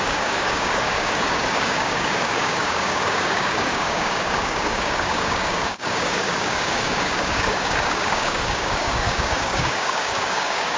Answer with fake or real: fake